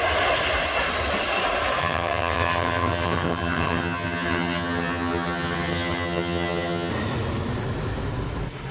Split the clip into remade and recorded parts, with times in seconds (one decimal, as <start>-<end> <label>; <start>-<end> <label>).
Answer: 0.0-1.8 recorded; 1.8-6.9 remade; 6.9-8.7 recorded